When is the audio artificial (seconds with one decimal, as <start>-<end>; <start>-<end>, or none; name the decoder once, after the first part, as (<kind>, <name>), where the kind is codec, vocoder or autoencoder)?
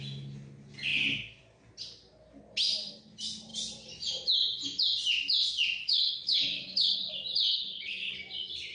5.8-7.1 (codec, HILCodec); 7.5-8.1